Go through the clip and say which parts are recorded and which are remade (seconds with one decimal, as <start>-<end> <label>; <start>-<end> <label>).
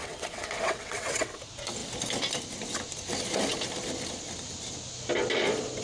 0.0-1.4 remade; 1.4-5.8 recorded